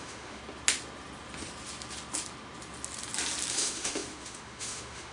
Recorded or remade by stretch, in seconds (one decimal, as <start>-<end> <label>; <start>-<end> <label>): 0.0-0.4 remade; 0.4-3.5 recorded; 3.5-5.1 remade